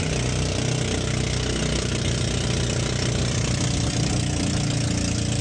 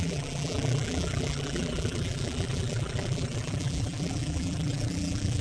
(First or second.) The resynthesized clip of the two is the second